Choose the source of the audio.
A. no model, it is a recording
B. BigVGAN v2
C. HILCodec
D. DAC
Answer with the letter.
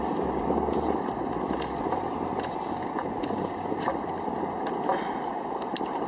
A